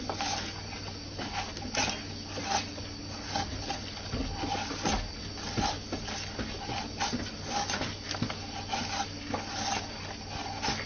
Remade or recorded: recorded